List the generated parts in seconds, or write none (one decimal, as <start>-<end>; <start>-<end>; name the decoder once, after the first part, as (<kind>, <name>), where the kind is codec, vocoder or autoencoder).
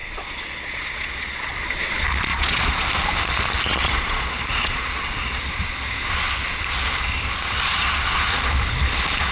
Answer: 0.0-1.7 (vocoder, Vocos); 2.3-2.9; 3.7-5.4